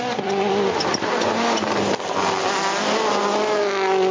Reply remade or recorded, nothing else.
recorded